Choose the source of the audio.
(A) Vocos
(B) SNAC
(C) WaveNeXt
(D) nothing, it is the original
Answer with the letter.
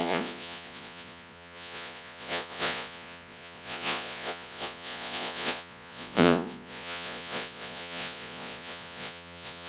A